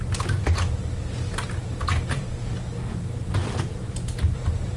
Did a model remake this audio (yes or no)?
no